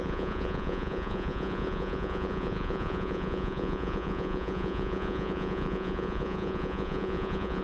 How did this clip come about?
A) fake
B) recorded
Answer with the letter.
A